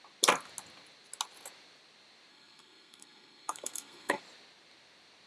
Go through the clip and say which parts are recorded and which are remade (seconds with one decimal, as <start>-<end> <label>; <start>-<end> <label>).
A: 0.0-2.3 recorded; 2.3-4.2 remade; 4.2-5.3 recorded